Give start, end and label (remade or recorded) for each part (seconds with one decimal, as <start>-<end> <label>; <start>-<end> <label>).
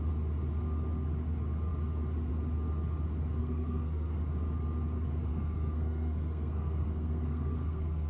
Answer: 0.0-3.4 recorded; 3.4-4.2 remade; 4.2-5.3 recorded; 5.3-8.1 remade